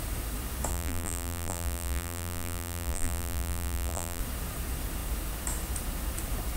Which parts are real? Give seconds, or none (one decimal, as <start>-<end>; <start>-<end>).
0.0-0.7; 4.2-6.6